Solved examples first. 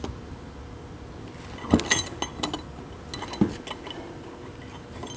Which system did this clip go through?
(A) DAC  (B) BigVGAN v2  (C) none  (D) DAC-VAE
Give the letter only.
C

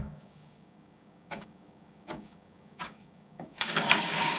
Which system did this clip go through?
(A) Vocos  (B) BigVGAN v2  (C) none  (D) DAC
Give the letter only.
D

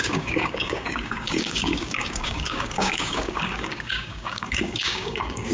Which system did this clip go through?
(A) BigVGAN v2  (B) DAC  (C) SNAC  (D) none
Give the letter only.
B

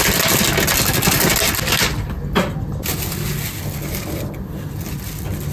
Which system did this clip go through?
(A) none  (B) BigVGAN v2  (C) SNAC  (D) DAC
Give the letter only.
A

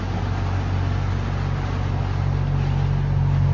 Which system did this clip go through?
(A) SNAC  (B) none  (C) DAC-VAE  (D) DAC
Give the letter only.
B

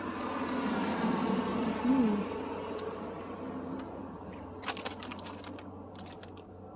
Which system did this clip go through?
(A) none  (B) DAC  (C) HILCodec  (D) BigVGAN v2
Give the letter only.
A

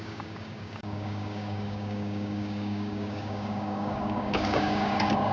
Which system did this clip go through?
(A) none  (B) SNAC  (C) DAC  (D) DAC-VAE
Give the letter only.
C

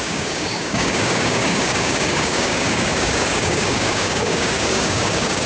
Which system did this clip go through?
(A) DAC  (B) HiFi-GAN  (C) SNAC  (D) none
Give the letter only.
A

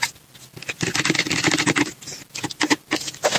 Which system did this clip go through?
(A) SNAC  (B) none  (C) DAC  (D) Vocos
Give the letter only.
B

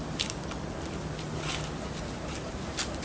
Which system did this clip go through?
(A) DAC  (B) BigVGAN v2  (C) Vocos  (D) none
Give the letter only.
D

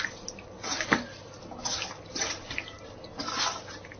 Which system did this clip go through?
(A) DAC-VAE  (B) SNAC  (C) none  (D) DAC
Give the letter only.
C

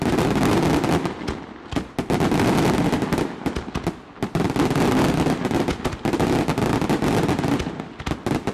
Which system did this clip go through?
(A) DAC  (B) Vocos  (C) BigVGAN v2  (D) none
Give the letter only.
D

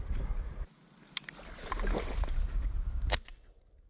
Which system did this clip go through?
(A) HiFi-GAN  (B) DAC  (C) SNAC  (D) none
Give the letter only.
D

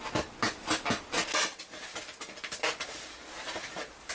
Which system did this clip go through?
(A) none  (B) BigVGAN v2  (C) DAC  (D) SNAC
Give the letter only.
A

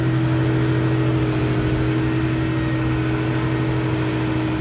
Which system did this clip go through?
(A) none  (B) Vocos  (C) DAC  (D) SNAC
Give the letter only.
A